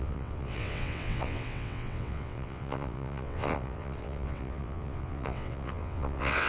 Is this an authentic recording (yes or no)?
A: no